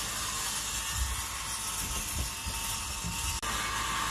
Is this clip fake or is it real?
real